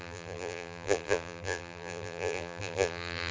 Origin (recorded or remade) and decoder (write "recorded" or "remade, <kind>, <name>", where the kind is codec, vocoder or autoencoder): remade, vocoder, BigVGAN v2